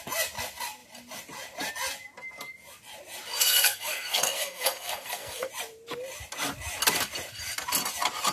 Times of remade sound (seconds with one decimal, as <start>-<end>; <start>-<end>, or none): 3.4-5.5